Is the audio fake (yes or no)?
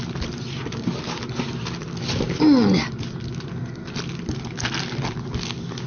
no